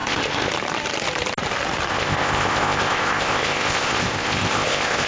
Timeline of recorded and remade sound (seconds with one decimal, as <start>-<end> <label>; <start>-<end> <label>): 0.0-0.5 remade; 0.5-1.9 recorded; 1.9-5.1 remade